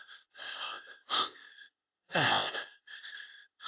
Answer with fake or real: fake